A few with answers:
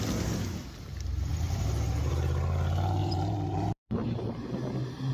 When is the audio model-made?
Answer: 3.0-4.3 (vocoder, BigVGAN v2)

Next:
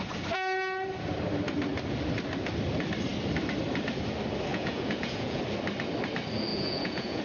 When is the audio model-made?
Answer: 4.5-5.4 (vocoder, Vocos); 6.5-7.2

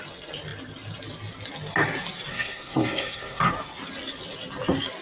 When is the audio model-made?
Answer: 2.3-3.5 (codec, SNAC)

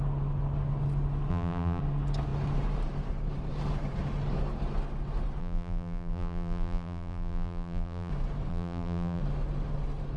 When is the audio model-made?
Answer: 1.3-1.8 (vocoder, BigVGAN v2); 5.4-8.1; 8.5-9.2

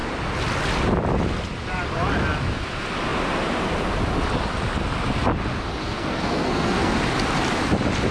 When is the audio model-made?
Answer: 5.8-6.9 (codec, SNAC)